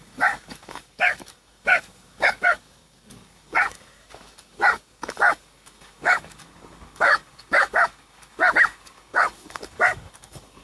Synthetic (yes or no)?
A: yes